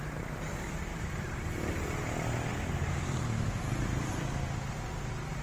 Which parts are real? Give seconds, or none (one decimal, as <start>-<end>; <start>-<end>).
0.0-0.9; 1.4-2.5; 4.1-5.4